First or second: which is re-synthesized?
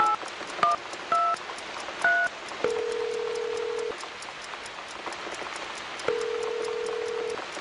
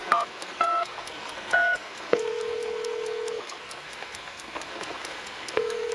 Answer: second